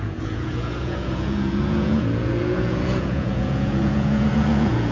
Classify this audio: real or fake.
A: fake